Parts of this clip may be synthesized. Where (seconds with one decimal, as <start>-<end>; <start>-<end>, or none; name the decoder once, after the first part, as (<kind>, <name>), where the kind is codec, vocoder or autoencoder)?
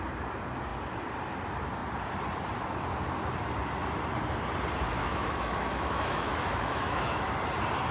5.0-7.2 (autoencoder, DAC-VAE)